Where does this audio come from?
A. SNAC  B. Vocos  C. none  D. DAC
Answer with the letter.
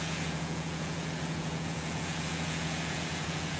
B